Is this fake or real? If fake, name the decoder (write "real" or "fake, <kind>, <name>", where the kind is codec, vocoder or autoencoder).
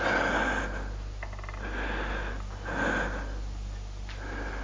real